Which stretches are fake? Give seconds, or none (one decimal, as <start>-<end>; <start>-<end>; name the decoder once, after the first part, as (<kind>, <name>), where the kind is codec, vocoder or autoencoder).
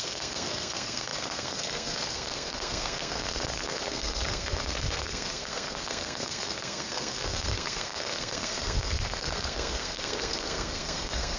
0.0-11.4 (codec, SNAC)